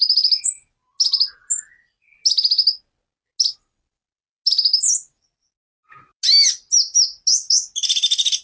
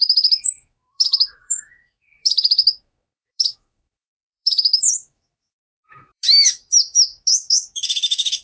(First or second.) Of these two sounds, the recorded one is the first